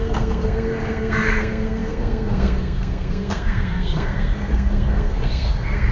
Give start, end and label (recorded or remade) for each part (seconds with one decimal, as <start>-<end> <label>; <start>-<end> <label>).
0.0-5.9 remade